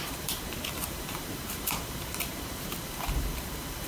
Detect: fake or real fake